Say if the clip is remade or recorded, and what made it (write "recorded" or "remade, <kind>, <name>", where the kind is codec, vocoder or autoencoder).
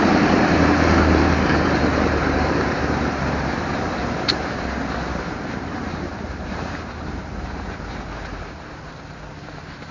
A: remade, vocoder, BigVGAN v2